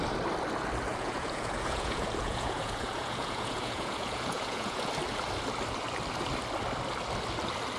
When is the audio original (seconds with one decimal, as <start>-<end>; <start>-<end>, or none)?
0.0-0.9; 4.9-7.8

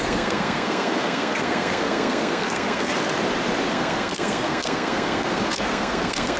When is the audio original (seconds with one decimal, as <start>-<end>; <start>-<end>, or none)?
2.9-3.7

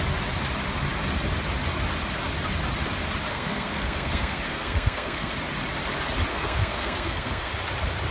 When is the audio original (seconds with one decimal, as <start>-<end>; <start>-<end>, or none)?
0.0-3.3; 5.3-6.3; 7.5-8.1

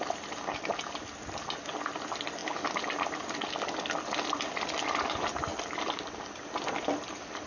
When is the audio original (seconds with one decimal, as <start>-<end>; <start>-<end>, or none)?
0.0-7.5

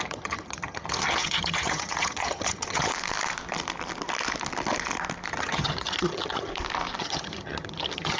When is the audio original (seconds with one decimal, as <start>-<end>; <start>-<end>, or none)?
2.9-5.3; 6.5-7.0

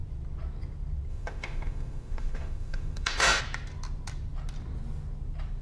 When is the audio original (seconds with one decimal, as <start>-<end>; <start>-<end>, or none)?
0.0-1.1; 3.4-5.6